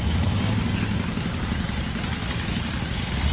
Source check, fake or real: real